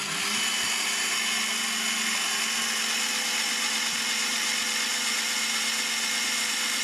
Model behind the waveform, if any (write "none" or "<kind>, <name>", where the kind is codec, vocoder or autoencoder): none